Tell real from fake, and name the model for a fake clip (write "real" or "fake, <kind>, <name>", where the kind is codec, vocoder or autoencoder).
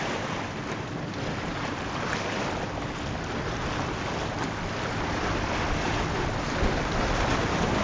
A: real